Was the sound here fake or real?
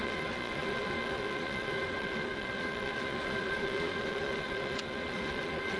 fake